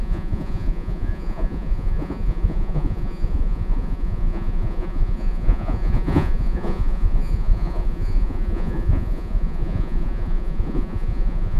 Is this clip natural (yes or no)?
no